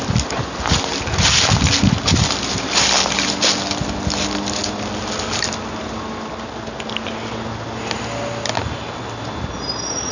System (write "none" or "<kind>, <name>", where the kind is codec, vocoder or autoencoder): none